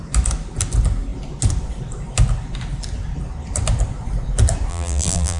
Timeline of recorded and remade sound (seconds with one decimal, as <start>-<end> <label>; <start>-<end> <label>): 0.0-4.7 recorded; 4.7-5.4 remade